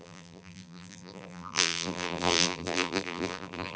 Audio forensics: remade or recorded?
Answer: remade